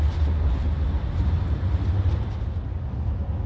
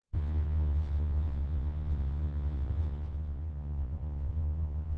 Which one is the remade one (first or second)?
second